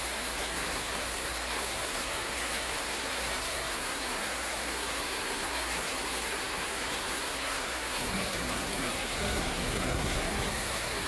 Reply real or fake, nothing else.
fake